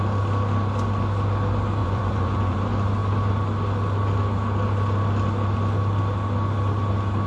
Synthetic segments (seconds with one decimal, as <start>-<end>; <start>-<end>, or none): 1.8-2.6